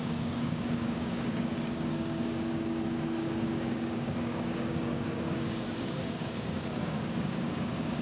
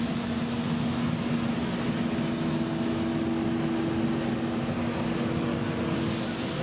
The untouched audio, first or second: second